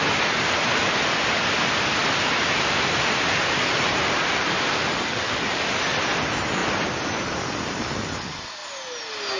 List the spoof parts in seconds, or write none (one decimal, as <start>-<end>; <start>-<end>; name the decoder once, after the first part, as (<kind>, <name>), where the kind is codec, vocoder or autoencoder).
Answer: 2.0-4.2 (vocoder, BigVGAN v2); 6.6-7.7